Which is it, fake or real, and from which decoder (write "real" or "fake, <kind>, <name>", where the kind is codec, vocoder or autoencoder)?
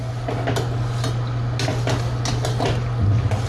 real